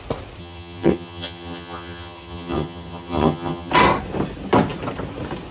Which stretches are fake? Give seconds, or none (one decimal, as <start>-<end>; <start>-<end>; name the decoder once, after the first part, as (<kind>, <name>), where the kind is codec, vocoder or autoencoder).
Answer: 0.4-3.7 (vocoder, HiFi-GAN)